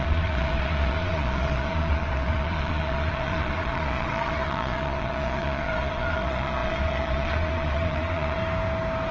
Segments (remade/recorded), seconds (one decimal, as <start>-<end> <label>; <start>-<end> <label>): 0.0-8.4 remade; 8.4-9.1 recorded